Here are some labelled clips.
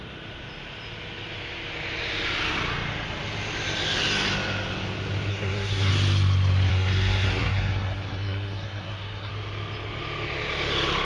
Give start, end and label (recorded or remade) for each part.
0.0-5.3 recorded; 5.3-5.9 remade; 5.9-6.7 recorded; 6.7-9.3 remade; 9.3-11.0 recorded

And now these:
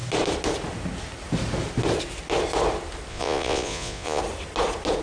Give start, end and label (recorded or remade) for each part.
0.0-3.1 recorded; 3.1-4.2 remade; 4.2-5.0 recorded

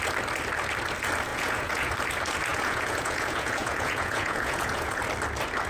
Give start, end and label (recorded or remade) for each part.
0.0-1.3 recorded; 1.3-1.9 remade; 1.9-2.5 recorded; 2.5-5.0 remade; 5.0-5.7 recorded

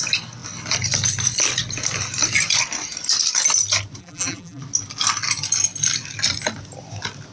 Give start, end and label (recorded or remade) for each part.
0.0-4.0 recorded; 4.0-4.6 remade; 4.6-7.3 recorded

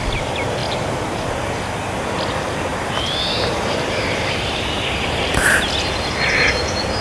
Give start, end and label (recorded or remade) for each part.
0.0-0.6 recorded; 0.6-1.3 remade; 1.3-2.7 recorded; 2.7-6.1 remade; 6.1-7.0 recorded

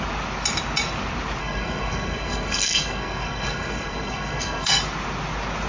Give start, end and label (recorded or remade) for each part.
0.0-1.4 recorded; 1.4-4.8 remade; 4.8-5.7 recorded

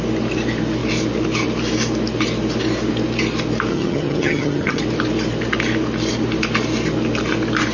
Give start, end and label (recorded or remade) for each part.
0.0-3.7 recorded; 3.7-4.8 remade; 4.8-7.7 recorded